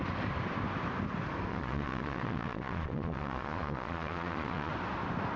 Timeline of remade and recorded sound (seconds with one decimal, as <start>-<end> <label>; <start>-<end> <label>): 0.0-1.5 recorded; 1.5-4.7 remade; 4.7-5.4 recorded